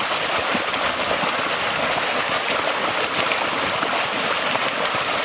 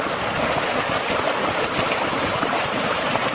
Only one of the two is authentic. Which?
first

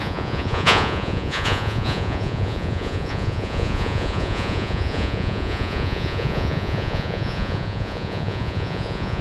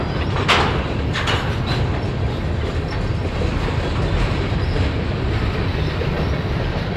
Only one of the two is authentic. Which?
second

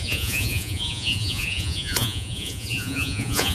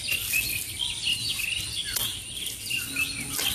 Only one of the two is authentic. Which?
second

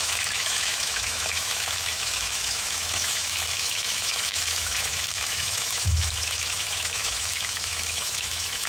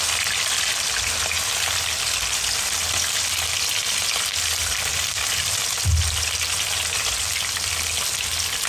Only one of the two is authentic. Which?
second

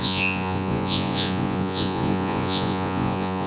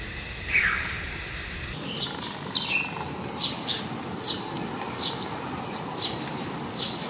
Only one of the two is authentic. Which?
second